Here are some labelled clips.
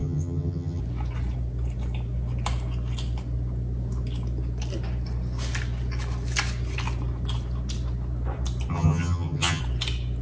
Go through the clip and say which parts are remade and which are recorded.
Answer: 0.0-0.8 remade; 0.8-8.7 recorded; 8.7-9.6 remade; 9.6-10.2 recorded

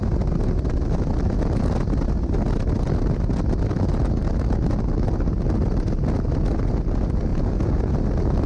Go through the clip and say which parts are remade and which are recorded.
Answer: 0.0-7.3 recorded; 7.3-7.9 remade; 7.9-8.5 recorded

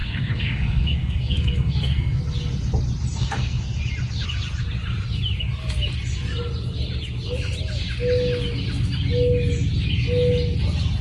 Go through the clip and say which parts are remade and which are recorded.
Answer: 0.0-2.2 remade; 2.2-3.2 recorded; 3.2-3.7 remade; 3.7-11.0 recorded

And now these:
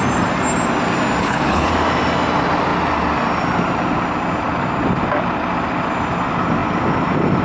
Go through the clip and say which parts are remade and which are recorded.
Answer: 0.0-1.2 recorded; 1.2-1.7 remade; 1.7-7.4 recorded

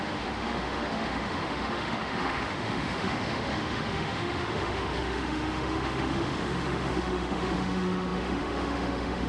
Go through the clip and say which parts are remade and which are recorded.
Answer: 0.0-9.3 remade

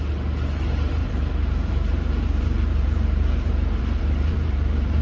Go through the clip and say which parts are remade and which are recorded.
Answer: 0.0-5.0 remade

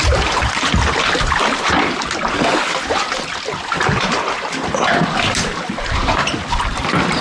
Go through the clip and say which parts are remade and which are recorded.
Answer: 0.0-7.2 recorded

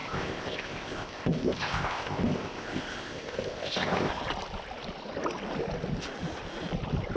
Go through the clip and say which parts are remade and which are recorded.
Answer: 0.0-4.1 remade; 4.1-7.2 recorded